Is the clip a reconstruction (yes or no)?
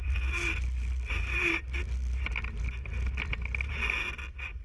no